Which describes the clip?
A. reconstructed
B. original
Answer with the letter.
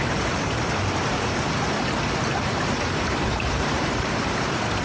A